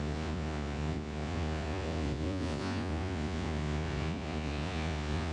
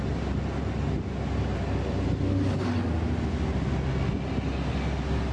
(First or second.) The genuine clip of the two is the second